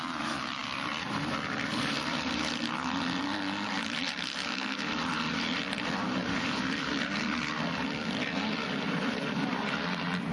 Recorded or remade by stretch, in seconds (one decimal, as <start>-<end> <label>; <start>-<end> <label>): 0.0-0.6 recorded; 0.6-2.6 remade; 2.6-10.3 recorded